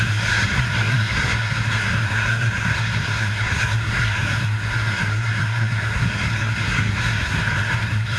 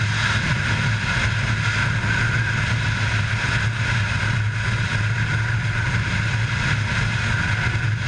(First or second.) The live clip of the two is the second